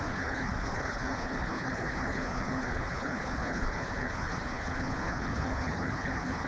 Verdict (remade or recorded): remade